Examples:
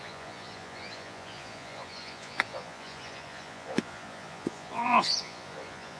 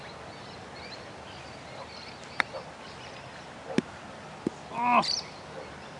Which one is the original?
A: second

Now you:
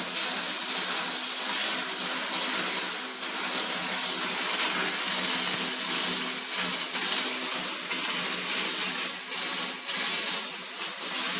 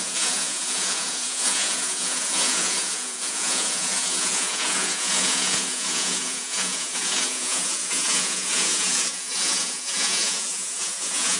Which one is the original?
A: first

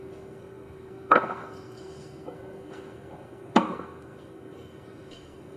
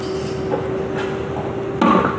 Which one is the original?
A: second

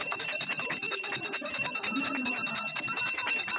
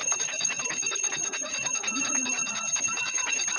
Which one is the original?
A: first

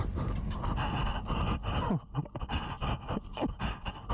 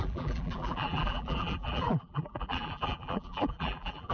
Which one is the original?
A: first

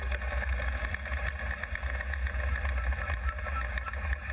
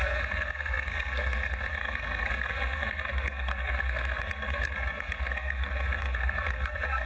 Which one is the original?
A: first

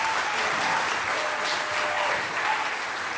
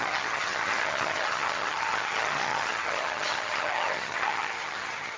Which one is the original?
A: first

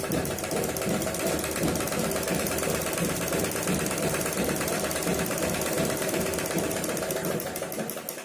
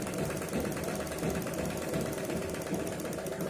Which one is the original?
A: first